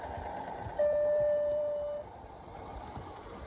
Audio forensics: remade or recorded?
remade